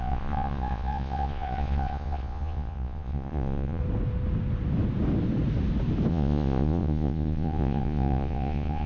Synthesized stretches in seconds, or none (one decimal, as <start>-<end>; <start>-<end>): 0.0-3.8; 6.1-8.9